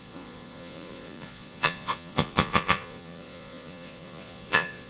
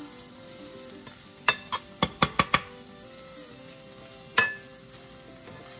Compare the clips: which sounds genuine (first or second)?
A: second